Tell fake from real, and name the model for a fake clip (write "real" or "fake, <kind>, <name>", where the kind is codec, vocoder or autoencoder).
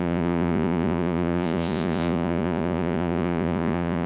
fake, vocoder, Vocos